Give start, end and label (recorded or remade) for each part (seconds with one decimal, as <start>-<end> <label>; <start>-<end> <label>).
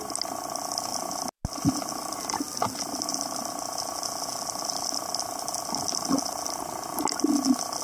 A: 0.0-7.8 recorded